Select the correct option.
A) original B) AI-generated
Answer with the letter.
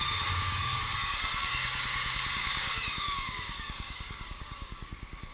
B